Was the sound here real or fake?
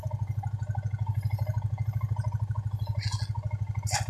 real